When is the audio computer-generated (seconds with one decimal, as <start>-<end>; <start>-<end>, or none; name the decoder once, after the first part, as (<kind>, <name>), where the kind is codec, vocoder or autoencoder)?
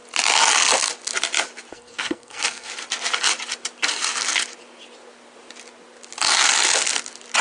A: 1.7-2.7 (codec, SNAC)